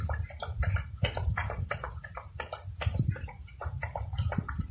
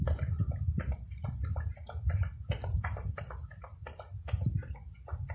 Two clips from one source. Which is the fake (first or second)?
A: first